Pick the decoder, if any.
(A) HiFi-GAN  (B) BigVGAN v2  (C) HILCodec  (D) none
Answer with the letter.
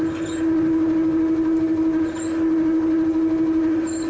D